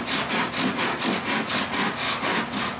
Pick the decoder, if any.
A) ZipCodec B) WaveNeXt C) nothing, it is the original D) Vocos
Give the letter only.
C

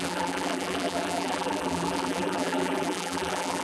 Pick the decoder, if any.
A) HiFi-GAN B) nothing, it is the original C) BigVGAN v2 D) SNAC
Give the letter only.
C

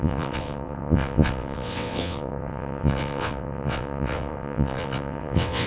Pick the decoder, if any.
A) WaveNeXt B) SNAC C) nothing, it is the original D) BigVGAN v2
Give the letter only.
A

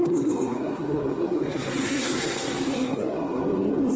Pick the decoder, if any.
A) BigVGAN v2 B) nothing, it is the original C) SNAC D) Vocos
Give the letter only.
C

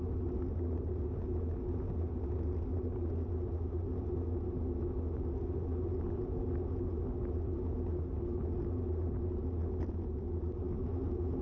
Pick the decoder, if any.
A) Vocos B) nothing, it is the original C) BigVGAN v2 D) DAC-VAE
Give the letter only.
B